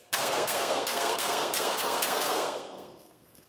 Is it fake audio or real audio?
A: fake